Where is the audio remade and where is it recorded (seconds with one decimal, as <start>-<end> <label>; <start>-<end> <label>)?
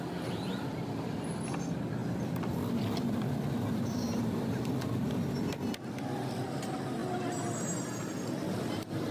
0.0-9.1 recorded